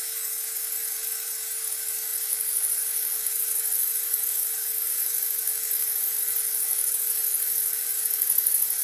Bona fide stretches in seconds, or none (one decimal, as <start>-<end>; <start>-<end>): none